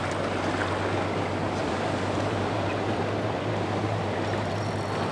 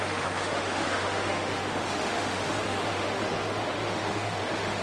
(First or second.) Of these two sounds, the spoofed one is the second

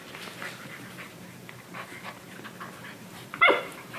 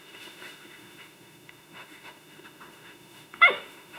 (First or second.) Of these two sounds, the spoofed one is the second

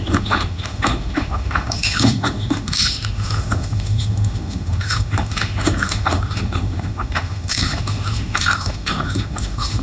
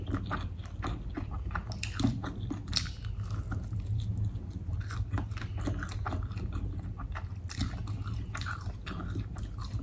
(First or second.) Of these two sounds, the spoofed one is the first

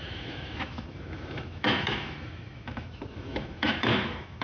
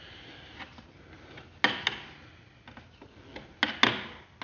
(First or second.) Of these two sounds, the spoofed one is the first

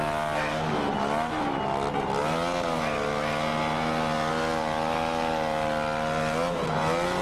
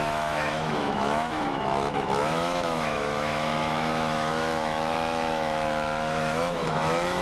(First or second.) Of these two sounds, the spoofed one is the second